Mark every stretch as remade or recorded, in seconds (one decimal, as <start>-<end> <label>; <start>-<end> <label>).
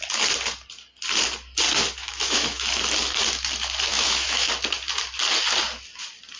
0.0-2.0 recorded; 2.0-2.8 remade; 2.8-3.9 recorded; 3.9-4.5 remade; 4.5-6.4 recorded